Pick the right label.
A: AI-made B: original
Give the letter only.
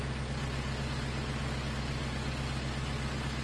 B